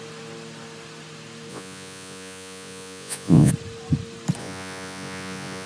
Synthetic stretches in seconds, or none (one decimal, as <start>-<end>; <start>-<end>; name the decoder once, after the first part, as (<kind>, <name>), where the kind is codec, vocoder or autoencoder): 1.5-3.5 (vocoder, Vocos); 4.4-5.7